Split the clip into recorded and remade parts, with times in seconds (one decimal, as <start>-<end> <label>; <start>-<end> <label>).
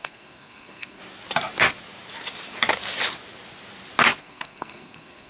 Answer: 0.0-1.0 remade; 1.0-4.2 recorded; 4.2-5.3 remade